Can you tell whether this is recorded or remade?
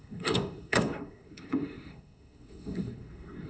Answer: remade